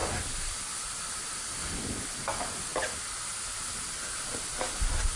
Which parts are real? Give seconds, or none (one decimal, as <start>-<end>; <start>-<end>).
1.8-5.2